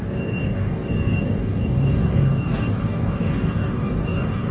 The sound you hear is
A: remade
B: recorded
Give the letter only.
A